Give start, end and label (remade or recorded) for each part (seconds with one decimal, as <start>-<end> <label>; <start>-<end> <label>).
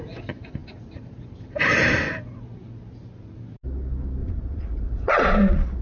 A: 0.0-4.2 recorded; 4.2-5.8 remade